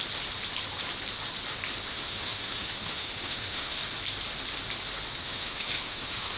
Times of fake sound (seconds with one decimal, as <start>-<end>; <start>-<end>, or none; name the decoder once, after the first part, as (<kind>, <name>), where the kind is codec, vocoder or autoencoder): 1.9-3.8 (autoencoder, DAC-VAE); 5.2-6.4